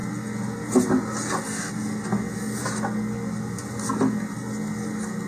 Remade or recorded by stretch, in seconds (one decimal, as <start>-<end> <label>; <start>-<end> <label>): 0.0-5.3 recorded